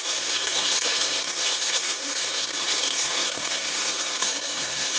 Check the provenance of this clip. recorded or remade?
remade